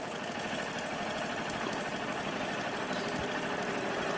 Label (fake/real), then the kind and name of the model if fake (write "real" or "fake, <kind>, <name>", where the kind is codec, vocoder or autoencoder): real